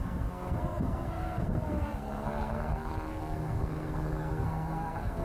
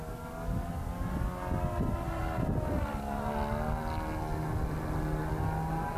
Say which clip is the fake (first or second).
first